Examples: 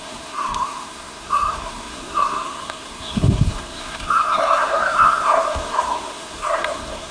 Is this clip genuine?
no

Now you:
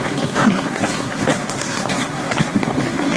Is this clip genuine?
no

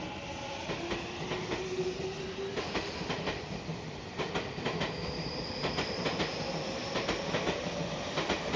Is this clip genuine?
yes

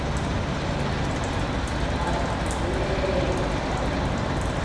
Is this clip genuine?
yes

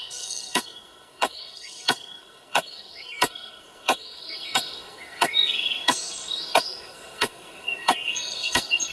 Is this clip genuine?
no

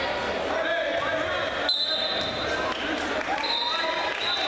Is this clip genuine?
yes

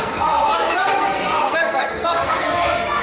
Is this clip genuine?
no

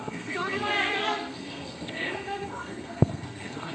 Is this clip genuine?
no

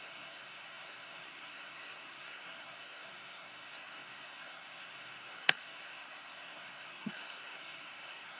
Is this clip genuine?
no